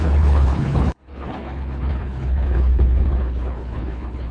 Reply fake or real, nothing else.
fake